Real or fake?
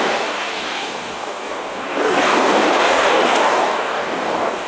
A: fake